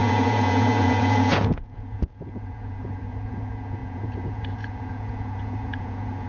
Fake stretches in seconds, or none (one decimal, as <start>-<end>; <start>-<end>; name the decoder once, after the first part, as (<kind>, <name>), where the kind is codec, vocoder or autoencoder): 0.0-6.3 (vocoder, Vocos)